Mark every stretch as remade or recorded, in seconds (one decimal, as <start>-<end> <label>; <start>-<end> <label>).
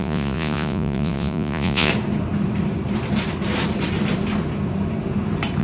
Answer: 0.0-1.9 remade; 1.9-5.6 recorded